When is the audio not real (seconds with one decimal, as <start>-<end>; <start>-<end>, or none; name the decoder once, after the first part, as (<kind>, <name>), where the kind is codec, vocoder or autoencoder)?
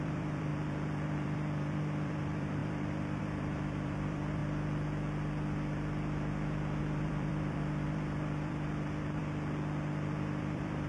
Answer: 0.0-4.4 (vocoder, BigVGAN v2); 6.8-9.2; 10.4-10.9